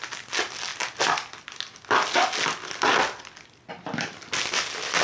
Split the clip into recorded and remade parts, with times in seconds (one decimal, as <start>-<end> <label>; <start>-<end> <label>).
0.0-5.0 recorded